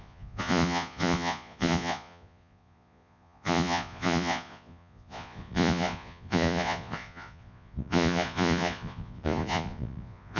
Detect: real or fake fake